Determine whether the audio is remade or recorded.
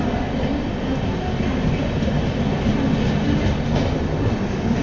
recorded